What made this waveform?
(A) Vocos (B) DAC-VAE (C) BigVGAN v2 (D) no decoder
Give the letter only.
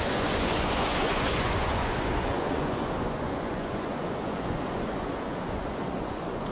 A